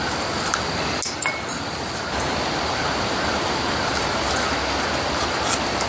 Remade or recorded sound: recorded